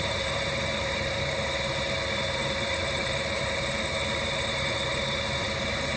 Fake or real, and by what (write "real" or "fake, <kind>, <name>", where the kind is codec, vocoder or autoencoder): fake, vocoder, BigVGAN v2